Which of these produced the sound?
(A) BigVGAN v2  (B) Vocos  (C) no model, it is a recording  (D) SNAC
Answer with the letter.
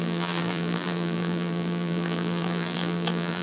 A